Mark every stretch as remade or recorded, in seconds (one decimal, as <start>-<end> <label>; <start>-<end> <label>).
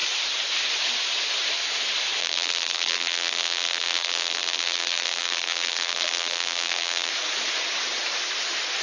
0.0-2.2 recorded; 2.2-7.1 remade; 7.1-8.8 recorded